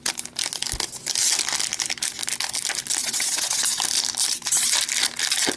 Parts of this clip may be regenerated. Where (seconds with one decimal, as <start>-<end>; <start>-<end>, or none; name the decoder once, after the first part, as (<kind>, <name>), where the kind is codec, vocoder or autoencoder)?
3.0-3.6 (vocoder, WaveNeXt)

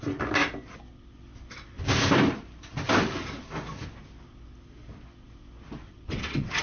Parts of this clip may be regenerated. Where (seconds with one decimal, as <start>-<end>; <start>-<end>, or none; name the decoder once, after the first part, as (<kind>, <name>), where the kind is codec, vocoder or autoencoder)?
5.8-6.6 (vocoder, WaveNeXt)

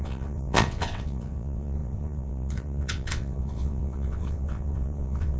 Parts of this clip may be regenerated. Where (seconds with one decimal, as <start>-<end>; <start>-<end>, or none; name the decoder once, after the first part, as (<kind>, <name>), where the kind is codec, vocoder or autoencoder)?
0.0-5.4 (vocoder, WaveNeXt)

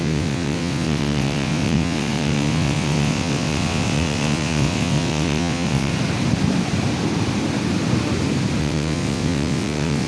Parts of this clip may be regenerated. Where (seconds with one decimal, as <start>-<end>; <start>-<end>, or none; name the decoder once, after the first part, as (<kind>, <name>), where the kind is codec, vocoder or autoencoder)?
0.0-5.9 (vocoder, WaveNeXt); 8.6-10.1